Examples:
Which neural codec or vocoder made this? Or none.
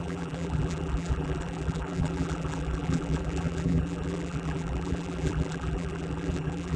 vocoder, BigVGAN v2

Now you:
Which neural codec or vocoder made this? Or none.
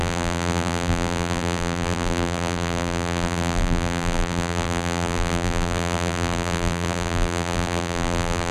vocoder, BigVGAN v2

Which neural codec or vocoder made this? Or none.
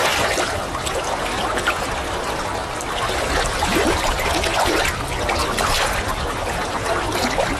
none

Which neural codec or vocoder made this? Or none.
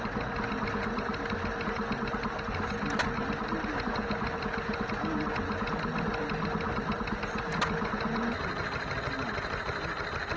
none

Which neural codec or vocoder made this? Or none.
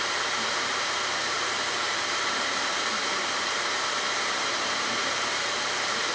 vocoder, BigVGAN v2